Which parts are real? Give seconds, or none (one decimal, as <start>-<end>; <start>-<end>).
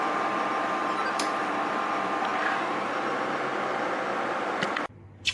2.3-4.5